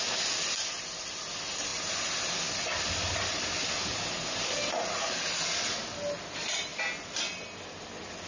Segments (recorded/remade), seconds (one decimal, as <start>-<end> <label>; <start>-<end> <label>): 0.0-8.3 recorded